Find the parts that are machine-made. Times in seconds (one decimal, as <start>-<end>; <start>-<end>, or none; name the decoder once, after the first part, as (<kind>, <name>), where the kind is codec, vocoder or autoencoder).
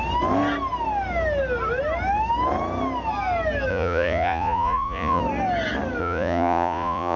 3.7-5.2 (vocoder, Vocos); 6.0-7.2